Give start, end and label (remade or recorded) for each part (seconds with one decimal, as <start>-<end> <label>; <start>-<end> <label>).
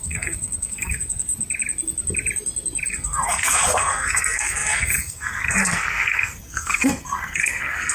0.0-1.3 remade; 1.3-2.9 recorded; 2.9-7.9 remade